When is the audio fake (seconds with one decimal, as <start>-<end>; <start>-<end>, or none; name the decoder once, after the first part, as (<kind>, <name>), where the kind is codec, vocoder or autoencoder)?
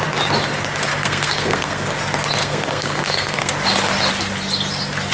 0.9-1.9 (codec, SNAC); 2.4-3.5